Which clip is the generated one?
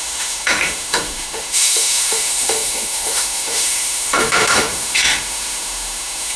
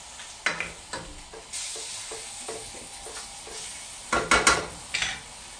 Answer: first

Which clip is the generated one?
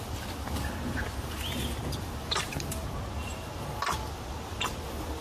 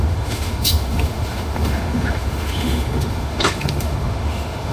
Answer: second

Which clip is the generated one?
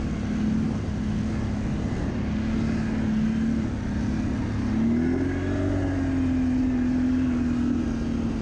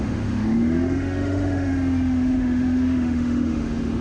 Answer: second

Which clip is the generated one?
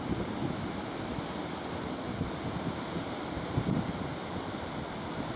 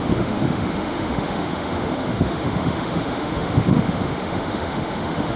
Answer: second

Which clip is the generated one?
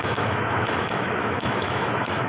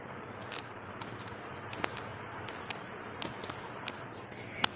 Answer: first